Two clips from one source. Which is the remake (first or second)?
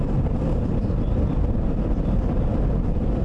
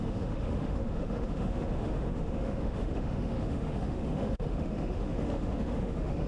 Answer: second